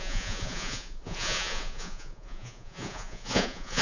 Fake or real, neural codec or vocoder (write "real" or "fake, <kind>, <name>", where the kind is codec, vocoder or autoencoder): fake, vocoder, Vocos